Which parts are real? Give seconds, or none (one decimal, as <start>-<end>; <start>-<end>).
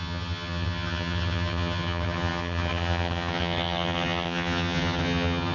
none